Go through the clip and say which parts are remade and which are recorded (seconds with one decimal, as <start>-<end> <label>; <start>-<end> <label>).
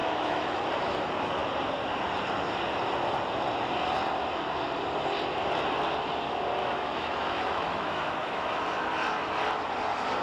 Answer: 0.0-0.6 remade; 0.6-6.6 recorded; 6.6-8.6 remade; 8.6-10.2 recorded